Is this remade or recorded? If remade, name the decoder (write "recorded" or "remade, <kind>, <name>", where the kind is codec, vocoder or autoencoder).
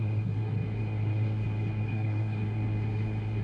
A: remade, codec, SNAC